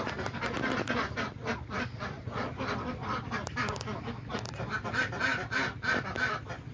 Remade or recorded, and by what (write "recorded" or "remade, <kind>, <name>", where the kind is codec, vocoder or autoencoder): recorded